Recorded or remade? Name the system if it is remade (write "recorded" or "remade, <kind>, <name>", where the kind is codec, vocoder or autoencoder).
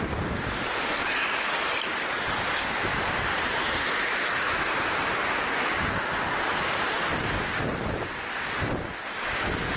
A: recorded